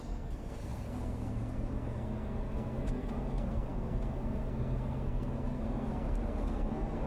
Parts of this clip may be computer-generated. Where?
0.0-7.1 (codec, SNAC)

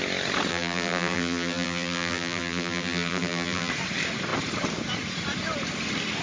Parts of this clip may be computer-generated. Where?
0.5-3.7 (vocoder, BigVGAN v2)